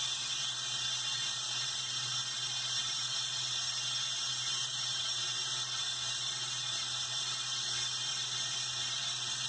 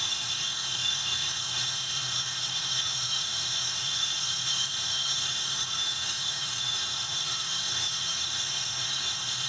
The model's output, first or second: second